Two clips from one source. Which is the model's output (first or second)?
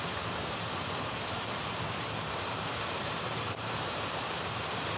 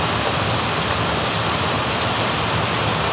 first